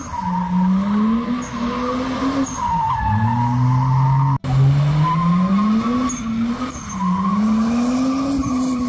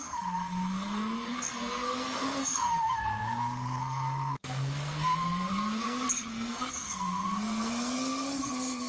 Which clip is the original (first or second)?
first